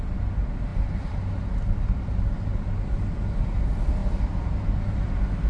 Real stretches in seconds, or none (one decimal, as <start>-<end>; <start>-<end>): 0.0-5.5